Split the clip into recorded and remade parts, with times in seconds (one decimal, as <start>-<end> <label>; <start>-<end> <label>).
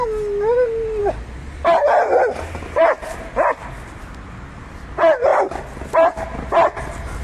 0.0-7.2 recorded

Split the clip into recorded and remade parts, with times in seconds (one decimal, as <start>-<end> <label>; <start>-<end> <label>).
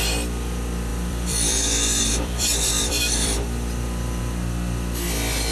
0.0-0.9 recorded; 0.9-4.2 remade; 4.2-5.5 recorded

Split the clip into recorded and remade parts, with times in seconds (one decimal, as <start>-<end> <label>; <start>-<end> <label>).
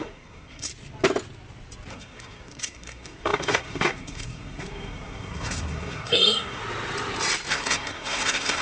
0.0-0.7 remade; 0.7-1.9 recorded; 1.9-6.6 remade; 6.6-7.5 recorded; 7.5-8.6 remade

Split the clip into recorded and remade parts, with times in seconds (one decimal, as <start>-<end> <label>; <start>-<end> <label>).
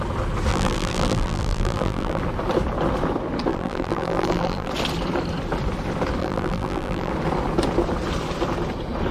0.0-0.5 recorded; 0.5-2.2 remade; 2.2-3.5 recorded; 3.5-4.7 remade; 4.7-6.2 recorded; 6.2-7.1 remade; 7.1-9.1 recorded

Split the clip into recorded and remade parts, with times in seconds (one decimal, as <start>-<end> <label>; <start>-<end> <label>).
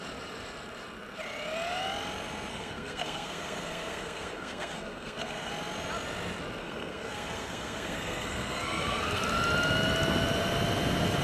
0.0-2.5 recorded; 2.5-5.5 remade; 5.5-6.6 recorded; 6.6-9.2 remade; 9.2-11.2 recorded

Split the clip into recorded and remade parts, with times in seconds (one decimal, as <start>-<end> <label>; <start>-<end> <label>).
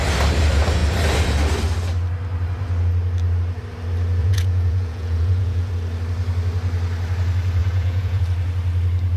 0.0-4.2 recorded; 4.2-5.7 remade; 5.7-7.6 recorded; 7.6-8.2 remade; 8.2-9.2 recorded